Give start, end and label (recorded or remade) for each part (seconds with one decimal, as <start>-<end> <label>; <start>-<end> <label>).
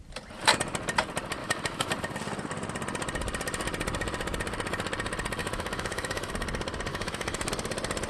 0.0-1.4 recorded; 1.4-1.9 remade; 1.9-5.4 recorded; 5.4-6.3 remade; 6.3-6.9 recorded; 6.9-7.5 remade; 7.5-8.1 recorded